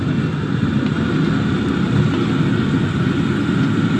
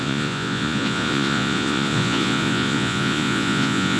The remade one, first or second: second